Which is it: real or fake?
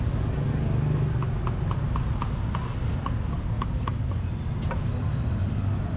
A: real